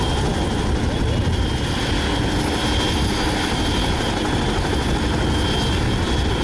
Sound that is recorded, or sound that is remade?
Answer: recorded